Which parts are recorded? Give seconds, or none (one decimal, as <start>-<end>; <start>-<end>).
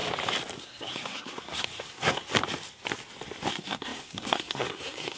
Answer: 0.0-0.6; 2.3-3.5